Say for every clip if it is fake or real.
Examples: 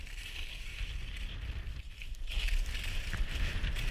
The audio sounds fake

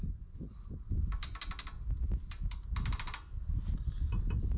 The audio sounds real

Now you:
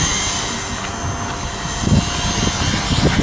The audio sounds real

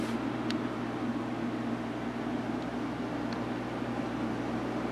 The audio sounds real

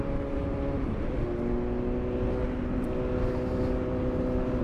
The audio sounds real